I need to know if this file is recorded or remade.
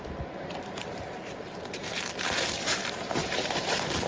remade